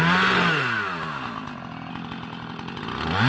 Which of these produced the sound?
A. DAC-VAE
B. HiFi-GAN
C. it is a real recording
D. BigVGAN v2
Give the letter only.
C